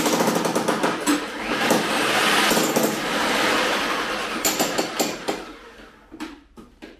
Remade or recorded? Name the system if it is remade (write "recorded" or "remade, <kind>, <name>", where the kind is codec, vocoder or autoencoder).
recorded